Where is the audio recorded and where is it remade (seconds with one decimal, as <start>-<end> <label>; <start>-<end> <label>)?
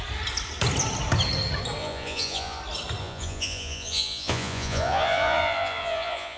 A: 0.0-1.8 recorded; 1.8-2.6 remade; 2.6-3.0 recorded; 3.0-6.4 remade